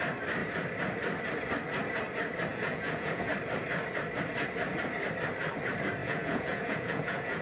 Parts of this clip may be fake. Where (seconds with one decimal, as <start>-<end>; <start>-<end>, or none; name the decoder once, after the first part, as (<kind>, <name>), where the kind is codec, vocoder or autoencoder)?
2.5-3.3 (vocoder, Vocos); 6.0-7.4